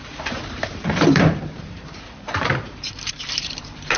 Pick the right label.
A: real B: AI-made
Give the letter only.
B